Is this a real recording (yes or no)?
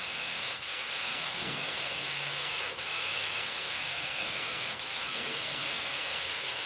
no